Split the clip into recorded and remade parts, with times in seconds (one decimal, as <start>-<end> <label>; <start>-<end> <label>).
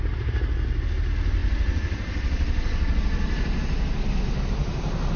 0.0-5.2 recorded